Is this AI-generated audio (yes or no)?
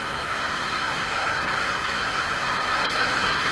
yes